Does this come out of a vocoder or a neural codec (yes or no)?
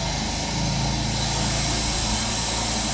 no